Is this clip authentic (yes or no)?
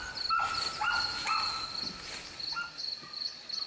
yes